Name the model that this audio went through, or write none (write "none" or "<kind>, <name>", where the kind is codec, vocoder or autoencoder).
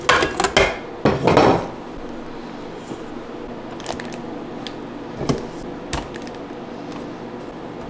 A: none